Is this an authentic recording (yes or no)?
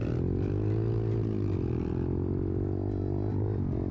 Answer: yes